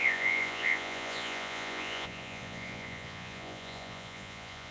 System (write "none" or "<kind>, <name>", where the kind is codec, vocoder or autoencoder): vocoder, Vocos